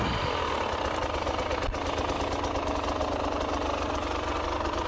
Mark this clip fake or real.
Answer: real